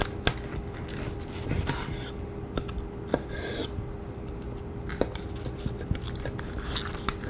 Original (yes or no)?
yes